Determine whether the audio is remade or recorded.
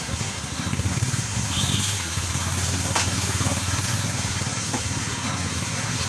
remade